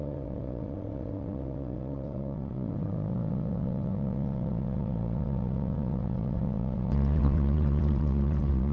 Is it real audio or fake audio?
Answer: fake